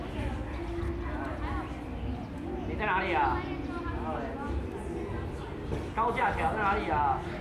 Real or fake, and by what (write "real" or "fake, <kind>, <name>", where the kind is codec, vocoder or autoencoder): real